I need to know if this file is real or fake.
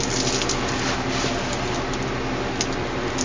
real